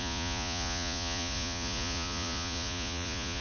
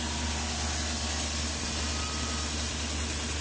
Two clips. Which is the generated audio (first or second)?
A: first